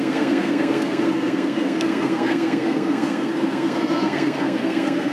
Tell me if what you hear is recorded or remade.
remade